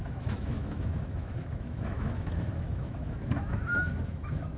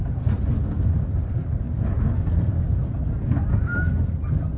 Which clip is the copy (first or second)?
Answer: first